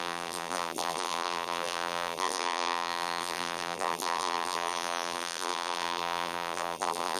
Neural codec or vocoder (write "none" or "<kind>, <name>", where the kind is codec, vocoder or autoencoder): vocoder, BigVGAN v2